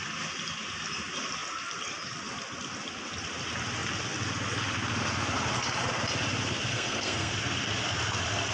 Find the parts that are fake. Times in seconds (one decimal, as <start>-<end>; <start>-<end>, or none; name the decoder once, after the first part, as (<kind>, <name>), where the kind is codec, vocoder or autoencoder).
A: 6.7-7.3 (codec, SNAC)